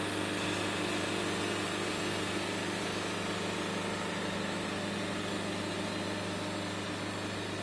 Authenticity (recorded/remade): recorded